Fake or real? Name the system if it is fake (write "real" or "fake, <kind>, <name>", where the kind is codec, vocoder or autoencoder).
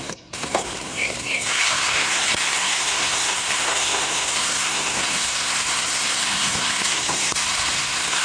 fake, codec, SNAC